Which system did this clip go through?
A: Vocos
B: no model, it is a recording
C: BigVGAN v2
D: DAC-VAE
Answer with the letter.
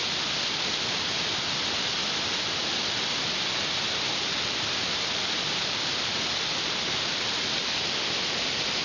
B